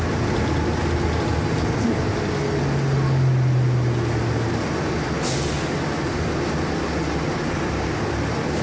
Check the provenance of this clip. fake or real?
real